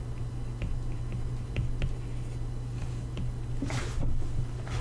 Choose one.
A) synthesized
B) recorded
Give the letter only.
B